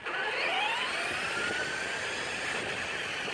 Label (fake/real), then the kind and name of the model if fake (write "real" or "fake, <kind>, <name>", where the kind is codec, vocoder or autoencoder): real